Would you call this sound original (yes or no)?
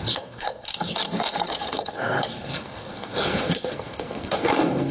no